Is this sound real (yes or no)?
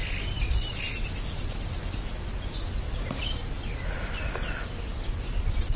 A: yes